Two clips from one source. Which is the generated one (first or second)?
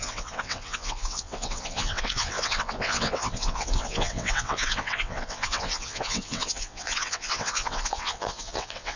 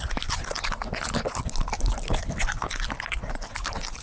first